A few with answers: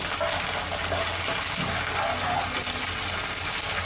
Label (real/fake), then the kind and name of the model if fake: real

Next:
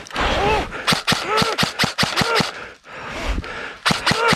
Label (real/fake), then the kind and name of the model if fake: real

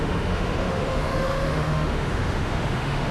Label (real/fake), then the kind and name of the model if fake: fake, autoencoder, DAC-VAE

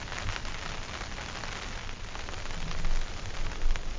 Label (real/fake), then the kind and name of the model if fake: real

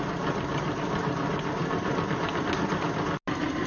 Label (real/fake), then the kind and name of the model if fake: real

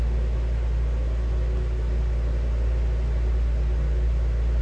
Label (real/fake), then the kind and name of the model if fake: real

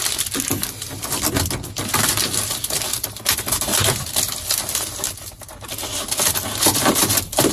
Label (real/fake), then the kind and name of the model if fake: real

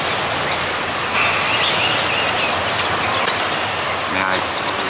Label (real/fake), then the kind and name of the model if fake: real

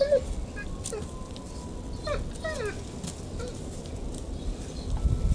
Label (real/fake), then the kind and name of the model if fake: real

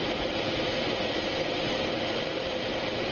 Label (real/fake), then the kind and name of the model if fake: real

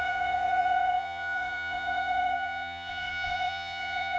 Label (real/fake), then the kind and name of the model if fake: fake, vocoder, Vocos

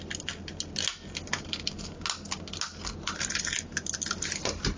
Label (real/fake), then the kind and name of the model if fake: real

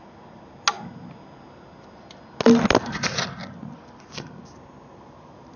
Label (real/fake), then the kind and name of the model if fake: real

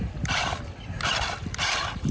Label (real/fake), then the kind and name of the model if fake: real